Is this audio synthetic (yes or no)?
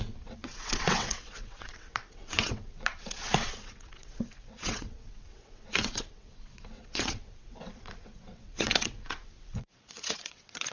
yes